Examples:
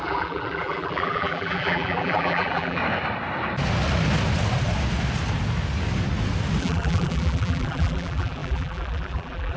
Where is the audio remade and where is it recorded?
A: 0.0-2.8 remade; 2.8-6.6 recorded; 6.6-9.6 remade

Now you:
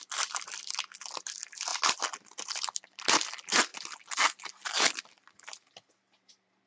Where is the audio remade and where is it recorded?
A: 0.0-3.7 remade; 3.7-4.9 recorded; 4.9-6.7 remade